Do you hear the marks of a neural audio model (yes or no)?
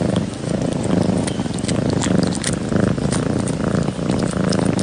no